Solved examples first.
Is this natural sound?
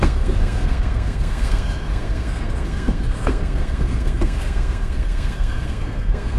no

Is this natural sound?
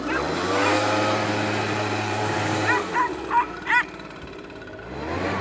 no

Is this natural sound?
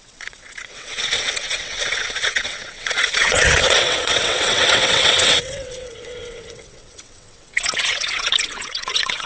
no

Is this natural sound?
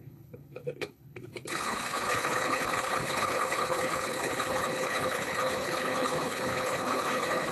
no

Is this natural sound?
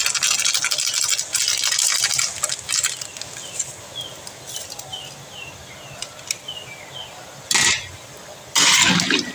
yes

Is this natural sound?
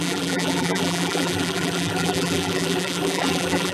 no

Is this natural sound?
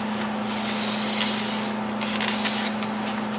yes